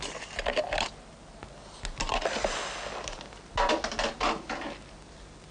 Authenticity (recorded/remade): recorded